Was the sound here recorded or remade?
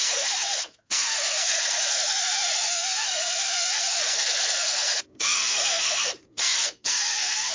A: remade